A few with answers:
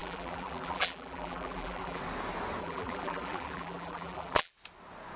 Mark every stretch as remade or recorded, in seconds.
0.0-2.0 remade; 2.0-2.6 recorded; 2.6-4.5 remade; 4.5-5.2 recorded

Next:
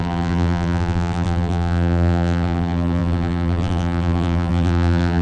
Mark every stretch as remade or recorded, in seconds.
0.0-5.2 remade